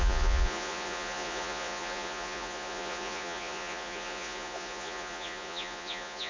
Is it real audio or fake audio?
fake